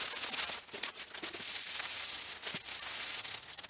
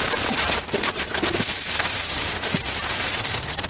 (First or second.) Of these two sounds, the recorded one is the first